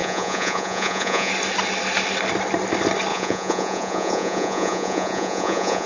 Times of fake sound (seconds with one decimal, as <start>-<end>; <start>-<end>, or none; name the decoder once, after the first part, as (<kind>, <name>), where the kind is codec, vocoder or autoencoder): 0.0-1.3 (vocoder, Vocos); 3.1-5.9